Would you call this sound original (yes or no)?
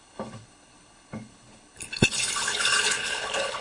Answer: no